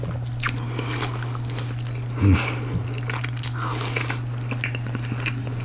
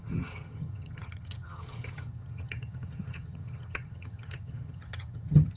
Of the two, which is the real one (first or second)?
first